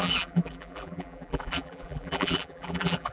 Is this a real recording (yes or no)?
no